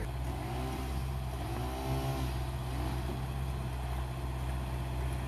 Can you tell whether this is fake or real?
real